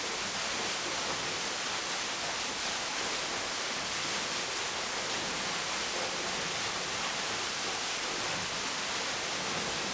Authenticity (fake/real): real